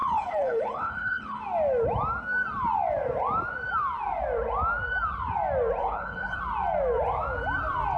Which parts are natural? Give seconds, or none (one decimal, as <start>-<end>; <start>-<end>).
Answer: 1.4-5.8; 6.4-8.0